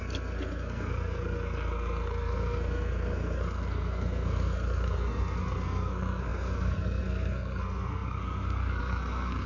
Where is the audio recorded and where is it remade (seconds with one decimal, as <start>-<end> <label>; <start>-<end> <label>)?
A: 0.0-9.5 remade